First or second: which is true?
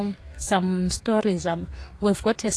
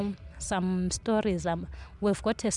second